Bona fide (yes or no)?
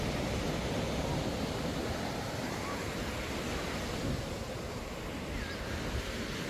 yes